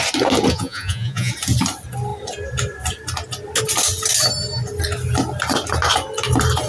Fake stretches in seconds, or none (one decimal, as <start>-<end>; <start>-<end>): 0.5-1.3